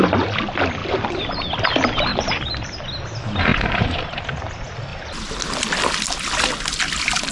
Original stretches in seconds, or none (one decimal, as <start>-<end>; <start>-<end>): 0.0-0.8; 1.7-2.1; 2.8-3.5; 4.3-7.3